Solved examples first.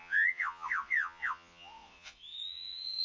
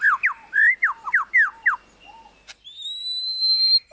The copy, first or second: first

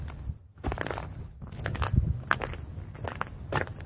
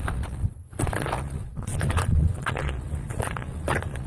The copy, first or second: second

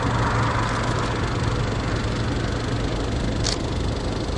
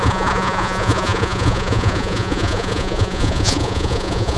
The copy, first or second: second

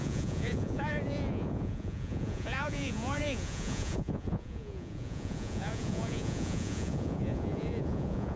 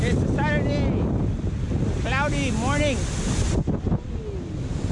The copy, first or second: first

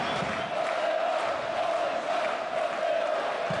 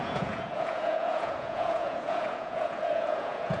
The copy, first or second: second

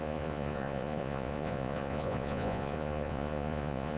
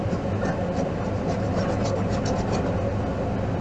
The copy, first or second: first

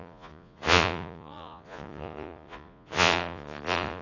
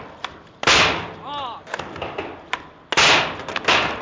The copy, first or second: first